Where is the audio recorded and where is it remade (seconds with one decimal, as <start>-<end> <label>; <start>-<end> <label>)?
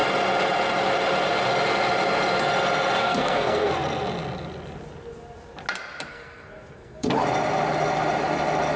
0.0-3.0 recorded; 3.0-3.7 remade; 3.7-6.1 recorded; 6.1-7.1 remade; 7.1-8.8 recorded